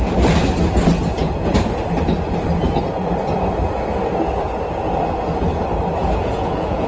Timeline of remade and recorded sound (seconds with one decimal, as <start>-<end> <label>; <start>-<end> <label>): 0.0-6.0 recorded; 6.0-6.9 remade